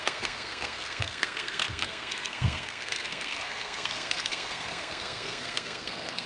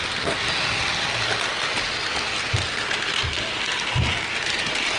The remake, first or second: first